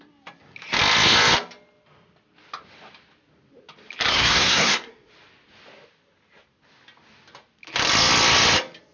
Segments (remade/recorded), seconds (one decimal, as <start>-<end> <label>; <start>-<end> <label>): 0.0-4.1 recorded; 4.1-5.1 remade; 5.1-8.9 recorded